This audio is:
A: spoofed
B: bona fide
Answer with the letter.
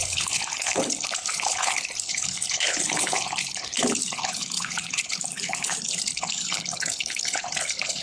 A